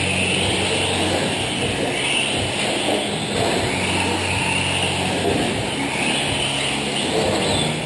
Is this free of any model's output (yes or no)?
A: yes